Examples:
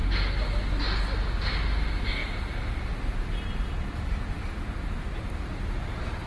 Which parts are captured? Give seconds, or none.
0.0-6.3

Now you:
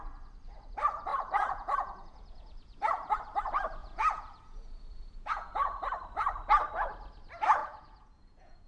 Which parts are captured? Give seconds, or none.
0.0-1.1; 3.2-3.8; 5.8-7.6

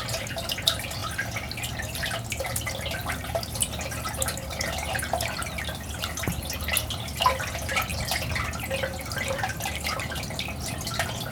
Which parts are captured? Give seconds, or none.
0.0-11.3

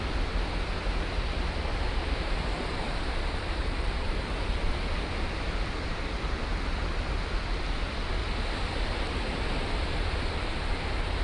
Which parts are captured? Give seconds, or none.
0.0-1.7; 4.5-8.2; 10.7-11.2